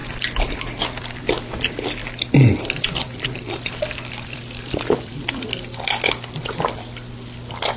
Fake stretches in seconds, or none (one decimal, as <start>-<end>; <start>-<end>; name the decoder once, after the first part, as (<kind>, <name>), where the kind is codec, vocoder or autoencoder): 0.5-2.0 (vocoder, BigVGAN v2); 2.7-7.8